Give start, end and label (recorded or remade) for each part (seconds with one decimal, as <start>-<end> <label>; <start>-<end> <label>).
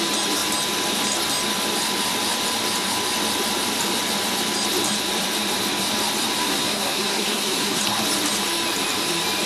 0.0-6.4 recorded; 6.4-7.8 remade; 7.8-9.5 recorded